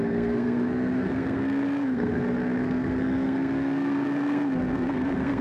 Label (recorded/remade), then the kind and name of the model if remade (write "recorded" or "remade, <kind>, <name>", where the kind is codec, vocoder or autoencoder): remade, codec, SNAC